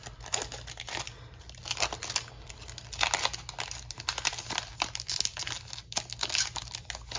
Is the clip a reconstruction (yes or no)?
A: no